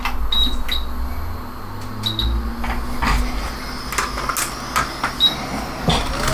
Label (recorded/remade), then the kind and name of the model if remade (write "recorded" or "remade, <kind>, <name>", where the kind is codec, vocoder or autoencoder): recorded